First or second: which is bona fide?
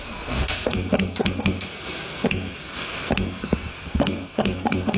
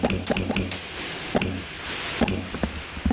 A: second